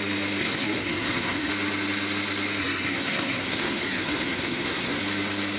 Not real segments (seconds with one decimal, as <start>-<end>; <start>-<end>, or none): 0.4-1.5; 2.6-5.0